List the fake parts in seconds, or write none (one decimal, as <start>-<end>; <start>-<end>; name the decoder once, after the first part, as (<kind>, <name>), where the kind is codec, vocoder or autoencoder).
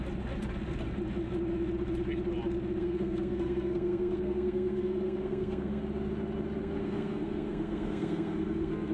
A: 2.8-5.8 (codec, SNAC); 6.6-8.9